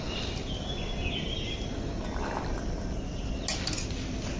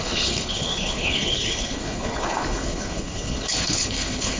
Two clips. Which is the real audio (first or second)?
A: first